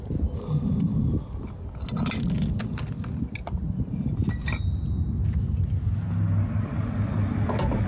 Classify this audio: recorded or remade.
recorded